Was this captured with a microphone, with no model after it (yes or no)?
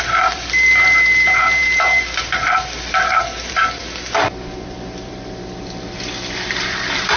no